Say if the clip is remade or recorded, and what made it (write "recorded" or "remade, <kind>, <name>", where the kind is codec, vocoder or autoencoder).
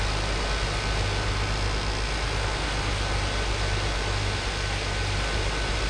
recorded